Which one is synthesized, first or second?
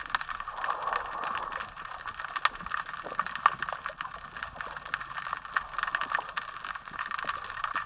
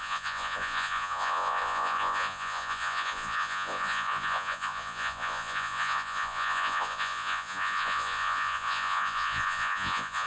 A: second